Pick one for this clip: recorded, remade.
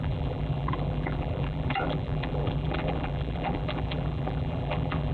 remade